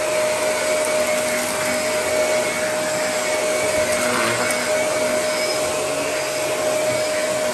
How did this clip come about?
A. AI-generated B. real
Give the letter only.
B